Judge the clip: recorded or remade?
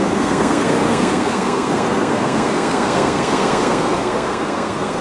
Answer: remade